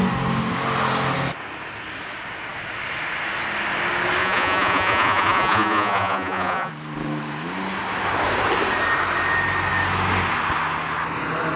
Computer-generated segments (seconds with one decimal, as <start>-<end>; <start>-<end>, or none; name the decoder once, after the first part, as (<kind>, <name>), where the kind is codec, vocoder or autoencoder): 4.2-6.7 (vocoder, Vocos)